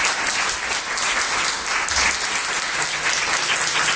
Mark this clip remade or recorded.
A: recorded